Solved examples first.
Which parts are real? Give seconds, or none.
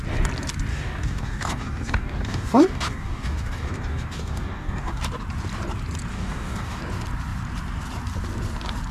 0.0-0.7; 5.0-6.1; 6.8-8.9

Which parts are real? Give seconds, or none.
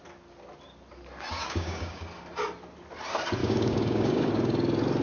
0.0-1.3; 2.0-3.4; 4.3-5.0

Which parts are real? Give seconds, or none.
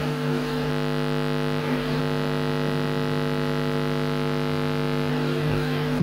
0.7-1.6; 2.0-5.1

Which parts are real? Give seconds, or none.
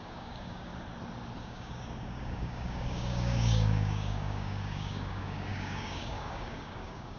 0.7-1.4